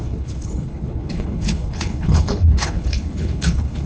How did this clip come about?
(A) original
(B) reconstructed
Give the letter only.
B